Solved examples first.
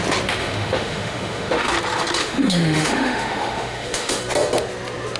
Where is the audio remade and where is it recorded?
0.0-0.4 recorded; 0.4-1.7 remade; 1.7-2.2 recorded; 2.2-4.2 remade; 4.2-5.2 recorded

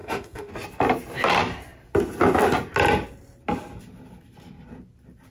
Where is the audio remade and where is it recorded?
0.0-0.5 remade; 0.5-5.3 recorded